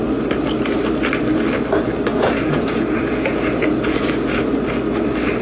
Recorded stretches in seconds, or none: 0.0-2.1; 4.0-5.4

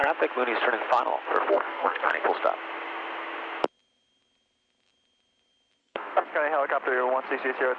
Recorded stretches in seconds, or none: 0.0-1.5; 2.1-5.8; 6.3-7.8